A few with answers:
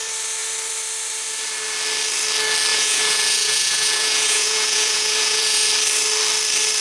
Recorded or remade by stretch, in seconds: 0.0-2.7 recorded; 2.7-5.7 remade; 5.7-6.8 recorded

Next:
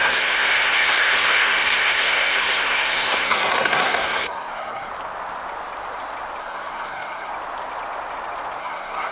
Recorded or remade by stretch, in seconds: 0.0-4.9 remade; 4.9-6.4 recorded; 6.4-7.3 remade; 7.3-8.6 recorded; 8.6-9.1 remade

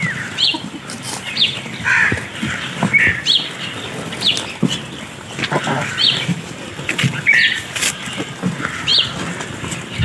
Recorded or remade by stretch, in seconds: 0.0-8.9 remade; 8.9-9.5 recorded; 9.5-10.0 remade

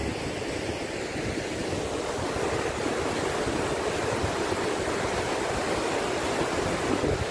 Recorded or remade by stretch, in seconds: 0.0-7.3 recorded

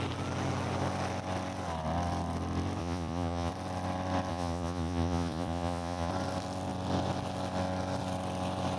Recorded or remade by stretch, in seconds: 0.0-2.8 recorded; 2.8-3.5 remade; 3.5-4.3 recorded; 4.3-6.1 remade; 6.1-8.8 recorded

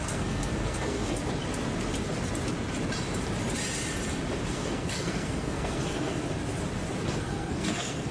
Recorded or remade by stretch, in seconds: 0.0-1.2 remade; 1.2-4.5 recorded; 4.5-6.2 remade; 6.2-7.0 recorded; 7.0-8.1 remade

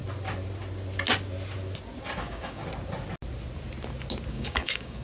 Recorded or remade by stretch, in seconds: 0.0-2.2 recorded; 2.2-2.6 remade; 2.6-4.3 recorded; 4.3-5.0 remade